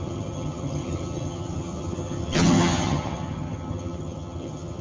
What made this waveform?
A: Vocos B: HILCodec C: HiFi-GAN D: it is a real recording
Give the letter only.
C